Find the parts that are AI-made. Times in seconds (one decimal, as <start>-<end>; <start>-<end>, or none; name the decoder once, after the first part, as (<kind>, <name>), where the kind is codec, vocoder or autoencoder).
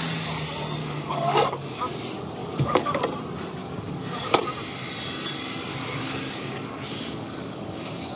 0.8-1.9 (codec, DAC); 2.4-3.0; 3.6-4.4; 5.7-8.2